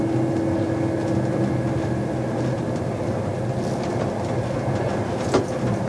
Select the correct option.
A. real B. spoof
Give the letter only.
A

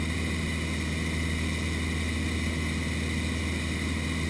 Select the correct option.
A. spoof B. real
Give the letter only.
B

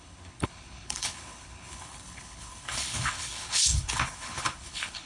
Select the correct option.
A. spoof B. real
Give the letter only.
A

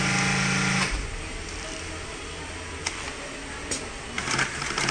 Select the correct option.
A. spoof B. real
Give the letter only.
B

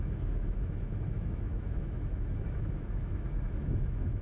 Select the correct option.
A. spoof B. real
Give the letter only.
A